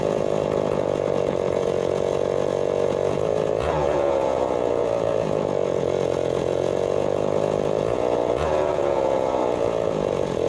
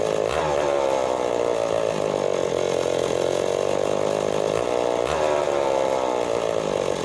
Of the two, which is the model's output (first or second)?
first